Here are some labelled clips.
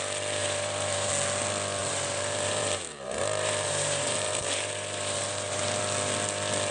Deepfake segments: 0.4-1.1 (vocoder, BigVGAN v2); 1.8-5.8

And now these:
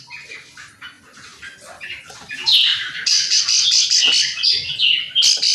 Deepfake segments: 2.7-3.4 (vocoder, BigVGAN v2)